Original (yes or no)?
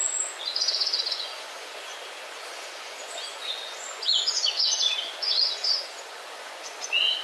no